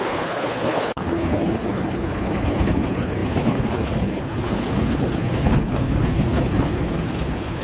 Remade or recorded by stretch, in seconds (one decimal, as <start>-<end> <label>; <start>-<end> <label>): 0.0-7.6 remade